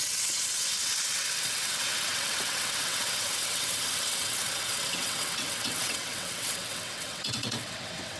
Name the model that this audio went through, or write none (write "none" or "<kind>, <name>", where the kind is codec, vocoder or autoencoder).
vocoder, WaveNeXt